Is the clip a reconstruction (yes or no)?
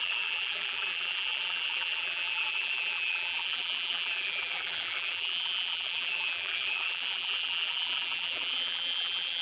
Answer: yes